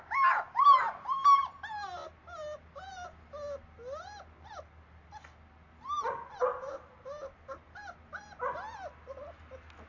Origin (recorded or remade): recorded